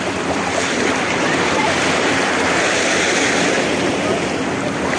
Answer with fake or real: real